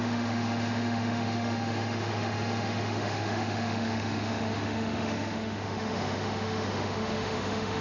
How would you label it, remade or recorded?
remade